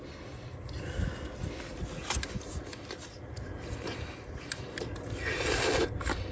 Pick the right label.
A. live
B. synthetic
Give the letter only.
A